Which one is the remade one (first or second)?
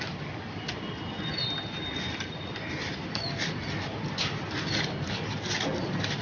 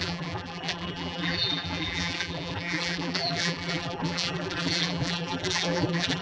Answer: second